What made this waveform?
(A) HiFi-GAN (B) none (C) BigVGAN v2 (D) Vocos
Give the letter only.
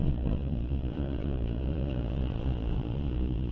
D